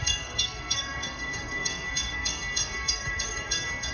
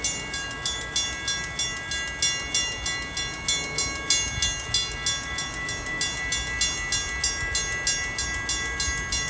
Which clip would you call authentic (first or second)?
second